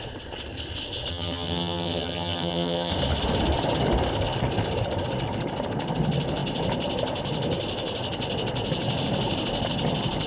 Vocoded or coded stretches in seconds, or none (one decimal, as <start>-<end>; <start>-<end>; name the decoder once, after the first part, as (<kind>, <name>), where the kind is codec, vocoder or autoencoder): 1.1-2.9 (vocoder, HiFi-GAN)